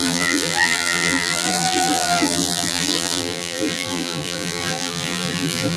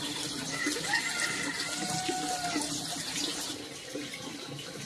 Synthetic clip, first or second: first